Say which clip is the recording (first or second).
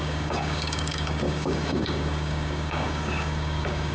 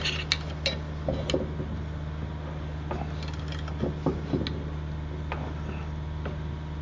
second